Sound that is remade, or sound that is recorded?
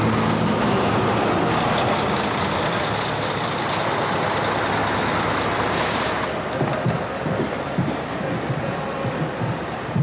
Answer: recorded